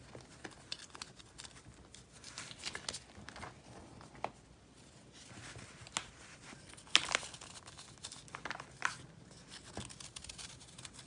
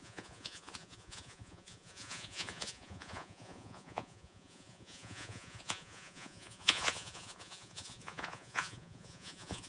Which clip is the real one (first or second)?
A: first